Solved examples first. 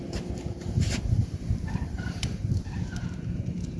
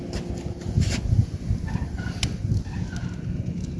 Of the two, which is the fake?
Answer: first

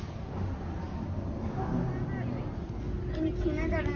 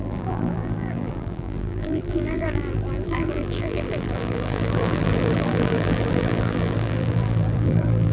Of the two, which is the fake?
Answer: second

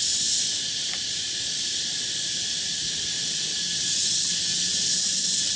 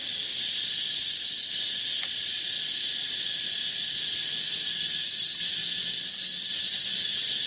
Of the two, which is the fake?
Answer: first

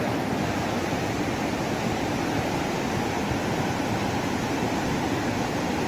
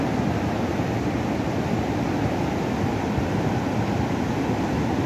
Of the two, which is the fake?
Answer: first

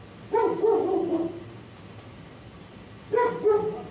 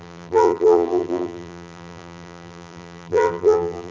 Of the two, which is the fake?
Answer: second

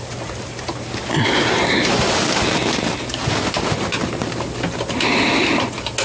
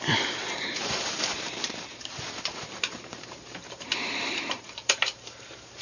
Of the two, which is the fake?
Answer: second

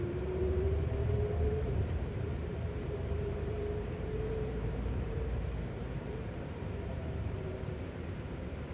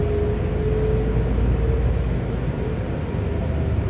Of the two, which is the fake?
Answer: first